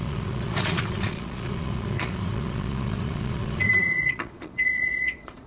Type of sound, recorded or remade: remade